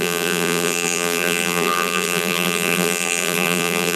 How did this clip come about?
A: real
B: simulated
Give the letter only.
B